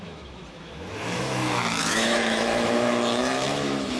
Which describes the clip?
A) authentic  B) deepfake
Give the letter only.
B